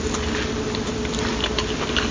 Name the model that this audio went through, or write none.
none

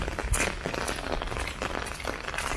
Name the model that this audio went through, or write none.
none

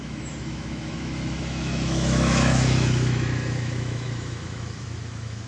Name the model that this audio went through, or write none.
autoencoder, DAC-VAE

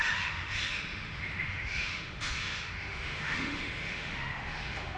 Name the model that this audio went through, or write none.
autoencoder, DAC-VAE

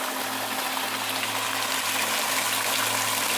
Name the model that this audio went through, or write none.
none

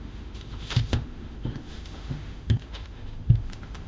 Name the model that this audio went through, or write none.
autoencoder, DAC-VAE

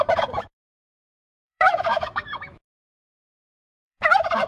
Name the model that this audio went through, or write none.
autoencoder, DAC-VAE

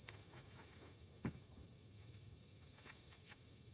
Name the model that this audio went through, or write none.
autoencoder, DAC-VAE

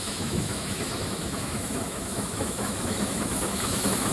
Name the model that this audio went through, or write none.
autoencoder, DAC-VAE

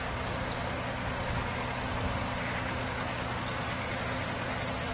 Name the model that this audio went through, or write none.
none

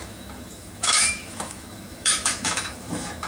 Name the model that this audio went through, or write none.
autoencoder, DAC-VAE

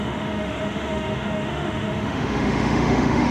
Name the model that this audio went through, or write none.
autoencoder, DAC-VAE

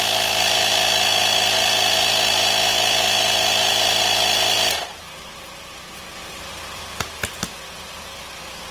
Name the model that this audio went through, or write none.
none